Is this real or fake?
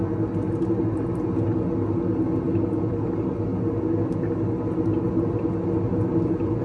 real